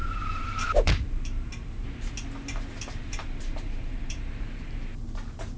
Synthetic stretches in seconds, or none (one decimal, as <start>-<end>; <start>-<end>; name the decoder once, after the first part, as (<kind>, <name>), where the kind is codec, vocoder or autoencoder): 0.0-1.5 (vocoder, BigVGAN v2); 3.0-4.3